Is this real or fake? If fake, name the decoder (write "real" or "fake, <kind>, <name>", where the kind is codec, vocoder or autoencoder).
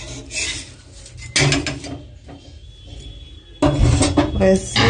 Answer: real